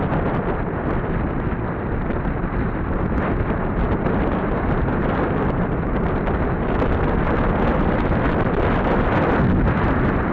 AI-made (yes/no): no